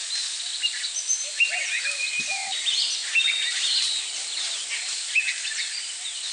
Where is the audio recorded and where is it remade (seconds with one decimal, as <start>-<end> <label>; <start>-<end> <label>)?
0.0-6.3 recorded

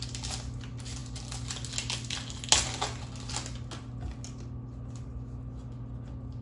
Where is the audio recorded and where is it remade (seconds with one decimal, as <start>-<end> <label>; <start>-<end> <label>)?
0.0-6.4 recorded

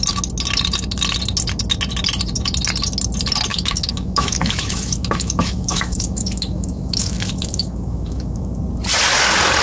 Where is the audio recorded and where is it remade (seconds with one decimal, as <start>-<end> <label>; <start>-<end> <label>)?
0.0-3.5 recorded; 3.5-8.6 remade; 8.6-9.6 recorded